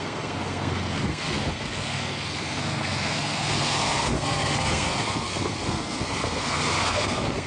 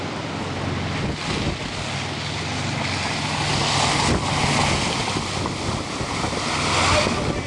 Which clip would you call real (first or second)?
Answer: second